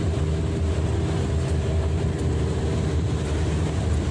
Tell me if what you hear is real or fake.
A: real